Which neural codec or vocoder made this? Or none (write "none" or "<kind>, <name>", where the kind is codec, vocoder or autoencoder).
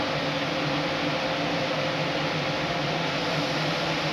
none